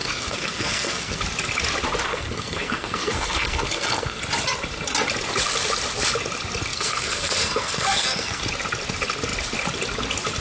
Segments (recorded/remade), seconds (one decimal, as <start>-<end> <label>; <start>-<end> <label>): 0.0-1.2 remade; 1.2-2.1 recorded; 2.1-4.2 remade; 4.2-6.7 recorded; 6.7-8.4 remade; 8.4-10.4 recorded